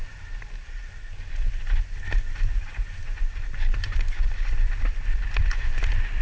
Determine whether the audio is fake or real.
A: real